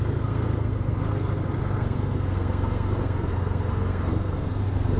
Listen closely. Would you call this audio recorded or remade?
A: remade